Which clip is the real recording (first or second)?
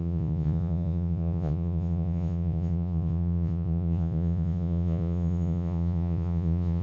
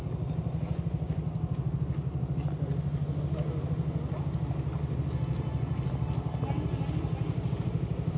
second